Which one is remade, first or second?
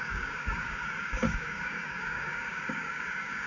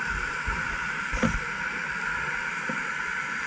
first